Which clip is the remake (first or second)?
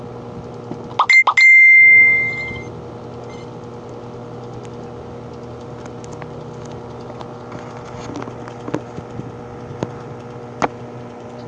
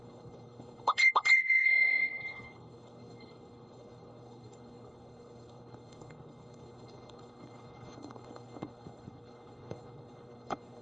second